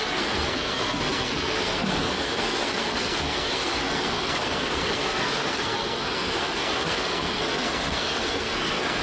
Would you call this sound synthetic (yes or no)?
yes